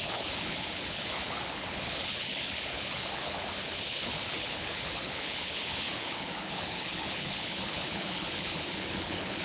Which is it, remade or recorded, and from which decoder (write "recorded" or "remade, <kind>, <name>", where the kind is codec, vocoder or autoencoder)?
remade, codec, HILCodec